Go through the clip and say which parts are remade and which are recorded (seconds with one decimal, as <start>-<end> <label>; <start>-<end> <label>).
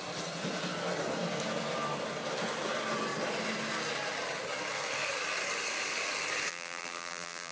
0.0-6.5 recorded; 6.5-7.5 remade